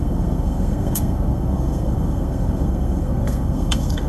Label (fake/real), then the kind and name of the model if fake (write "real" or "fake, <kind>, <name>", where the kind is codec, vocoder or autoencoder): fake, codec, SNAC